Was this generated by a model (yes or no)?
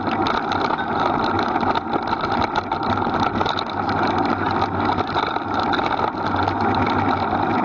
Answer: no